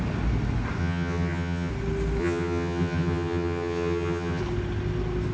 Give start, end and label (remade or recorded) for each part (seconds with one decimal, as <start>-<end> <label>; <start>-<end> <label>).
0.0-0.8 recorded; 0.8-1.7 remade; 1.7-2.2 recorded; 2.2-4.4 remade; 4.4-5.3 recorded